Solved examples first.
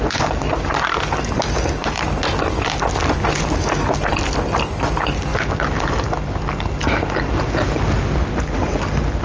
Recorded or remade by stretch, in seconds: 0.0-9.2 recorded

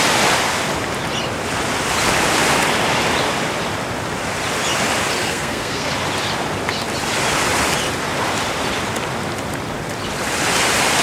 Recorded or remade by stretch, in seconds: 0.0-5.2 recorded; 5.2-5.9 remade; 5.9-11.0 recorded

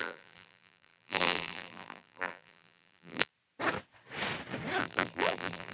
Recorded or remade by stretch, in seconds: 0.0-3.3 remade; 3.3-4.8 recorded; 4.8-5.7 remade